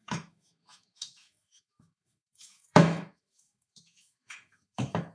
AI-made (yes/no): yes